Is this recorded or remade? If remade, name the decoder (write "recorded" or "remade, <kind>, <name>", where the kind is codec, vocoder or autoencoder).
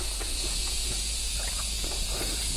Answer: remade, vocoder, Vocos